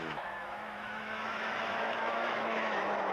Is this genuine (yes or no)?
no